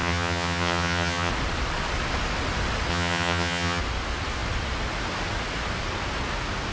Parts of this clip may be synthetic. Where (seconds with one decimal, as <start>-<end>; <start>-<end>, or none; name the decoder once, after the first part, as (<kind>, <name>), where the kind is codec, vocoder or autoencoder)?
0.0-1.3 (vocoder, HiFi-GAN); 2.9-3.8